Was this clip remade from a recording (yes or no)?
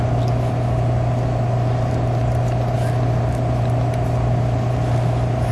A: yes